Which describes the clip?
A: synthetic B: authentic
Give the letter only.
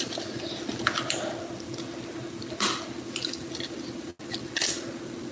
B